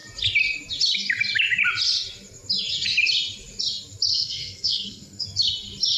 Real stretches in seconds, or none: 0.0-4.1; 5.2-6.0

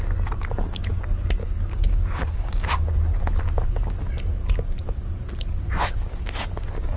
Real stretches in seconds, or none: 0.0-1.4; 2.7-7.0

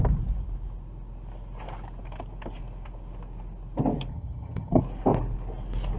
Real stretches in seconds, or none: 0.0-4.1; 4.8-6.0

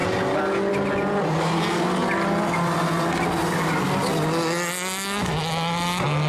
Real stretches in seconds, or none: 0.0-6.3

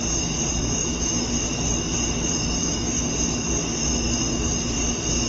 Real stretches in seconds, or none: 0.0-0.8; 1.3-2.6; 3.1-5.3

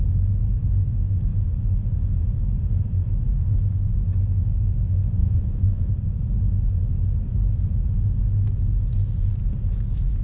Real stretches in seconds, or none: 0.0-5.2; 5.9-10.2

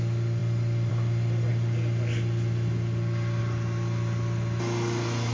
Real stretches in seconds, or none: 0.0-5.3